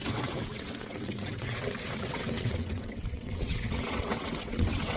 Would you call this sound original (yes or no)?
no